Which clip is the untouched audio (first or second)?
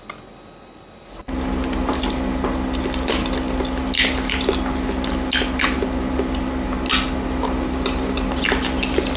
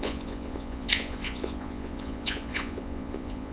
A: first